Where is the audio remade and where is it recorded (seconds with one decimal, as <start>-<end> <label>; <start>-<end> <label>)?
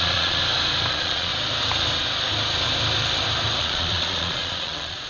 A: 0.0-0.4 remade; 0.4-0.9 recorded; 0.9-1.3 remade; 1.3-3.6 recorded; 3.6-5.1 remade